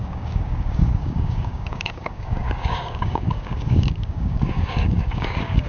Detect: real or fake fake